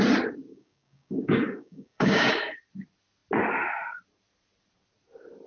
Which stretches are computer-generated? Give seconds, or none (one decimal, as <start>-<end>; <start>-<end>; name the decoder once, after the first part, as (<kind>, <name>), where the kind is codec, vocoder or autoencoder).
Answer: 0.5-2.3 (codec, DAC)